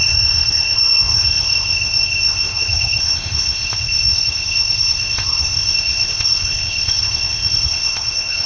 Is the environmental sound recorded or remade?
remade